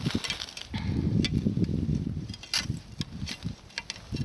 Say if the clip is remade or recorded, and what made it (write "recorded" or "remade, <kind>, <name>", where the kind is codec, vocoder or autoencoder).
recorded